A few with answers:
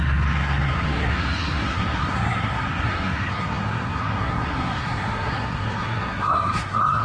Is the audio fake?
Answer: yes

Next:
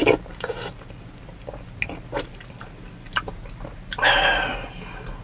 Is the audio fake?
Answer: no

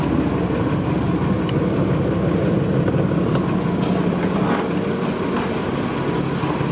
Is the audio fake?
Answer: no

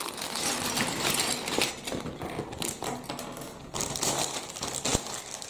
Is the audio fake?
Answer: no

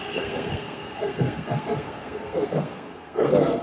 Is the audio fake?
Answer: yes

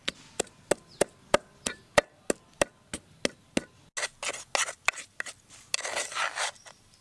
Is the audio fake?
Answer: no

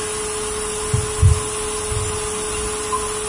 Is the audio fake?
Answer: no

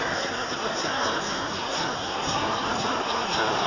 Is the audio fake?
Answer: yes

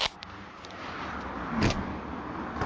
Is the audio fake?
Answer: no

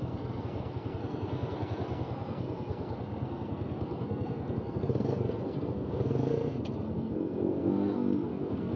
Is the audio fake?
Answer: yes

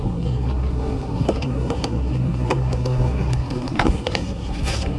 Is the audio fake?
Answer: yes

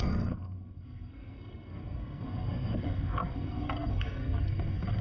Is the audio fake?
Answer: yes